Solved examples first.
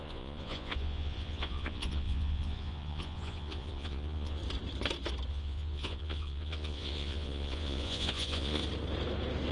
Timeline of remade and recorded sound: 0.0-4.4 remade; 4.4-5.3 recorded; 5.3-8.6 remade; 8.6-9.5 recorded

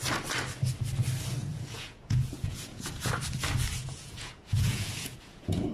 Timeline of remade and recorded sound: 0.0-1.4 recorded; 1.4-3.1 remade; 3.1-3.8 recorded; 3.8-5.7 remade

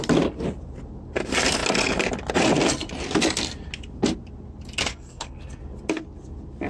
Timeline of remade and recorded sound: 0.0-4.9 recorded; 4.9-5.6 remade; 5.6-6.7 recorded

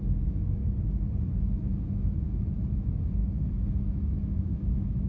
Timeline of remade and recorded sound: 0.0-0.6 remade; 0.6-1.2 recorded; 1.2-3.2 remade; 3.2-3.7 recorded; 3.7-5.1 remade

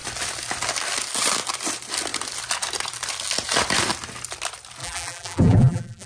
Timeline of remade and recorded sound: 0.0-4.8 recorded; 4.8-6.1 remade

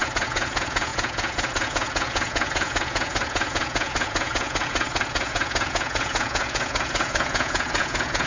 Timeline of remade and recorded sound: 0.0-8.3 remade